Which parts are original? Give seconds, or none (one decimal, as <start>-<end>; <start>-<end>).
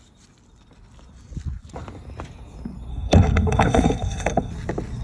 0.0-2.9; 4.5-5.0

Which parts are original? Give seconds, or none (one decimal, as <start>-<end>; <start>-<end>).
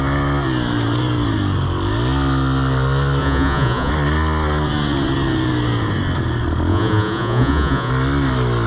0.0-3.2; 3.9-6.7; 7.9-8.7